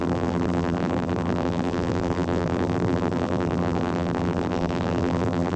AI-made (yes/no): yes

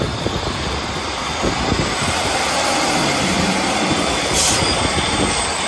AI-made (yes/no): no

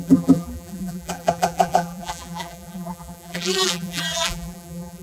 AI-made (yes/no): yes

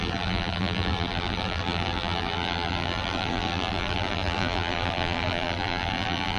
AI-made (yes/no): yes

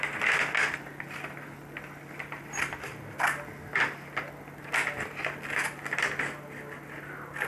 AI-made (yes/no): no